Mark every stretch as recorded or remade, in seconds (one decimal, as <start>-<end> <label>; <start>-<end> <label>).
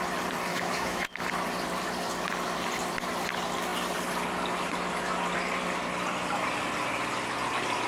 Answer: 0.0-0.5 recorded; 0.5-1.2 remade; 1.2-7.9 recorded